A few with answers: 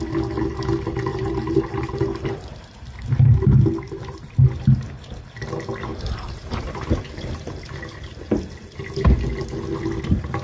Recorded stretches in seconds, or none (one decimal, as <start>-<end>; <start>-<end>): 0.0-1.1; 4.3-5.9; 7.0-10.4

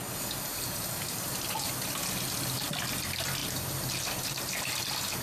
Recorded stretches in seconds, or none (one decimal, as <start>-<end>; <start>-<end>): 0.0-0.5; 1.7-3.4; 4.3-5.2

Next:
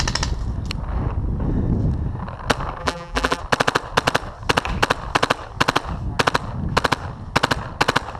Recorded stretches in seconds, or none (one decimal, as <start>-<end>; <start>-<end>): 0.0-2.8; 3.4-8.2